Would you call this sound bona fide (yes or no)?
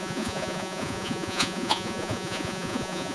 no